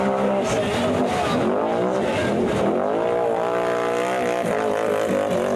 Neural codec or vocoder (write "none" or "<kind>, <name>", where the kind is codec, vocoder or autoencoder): none